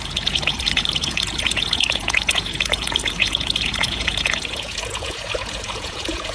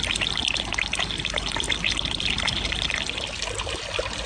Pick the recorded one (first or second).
second